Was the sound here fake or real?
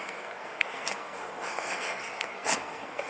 fake